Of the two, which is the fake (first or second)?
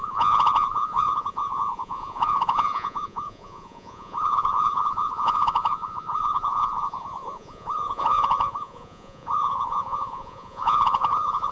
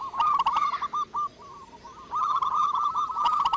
first